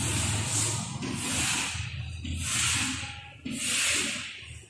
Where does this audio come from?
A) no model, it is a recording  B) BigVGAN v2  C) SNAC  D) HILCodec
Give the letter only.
A